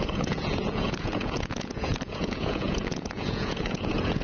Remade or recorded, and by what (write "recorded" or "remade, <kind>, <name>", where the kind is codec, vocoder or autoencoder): remade, vocoder, Vocos